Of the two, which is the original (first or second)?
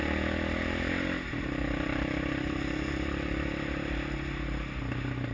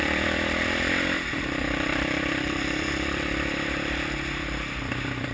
first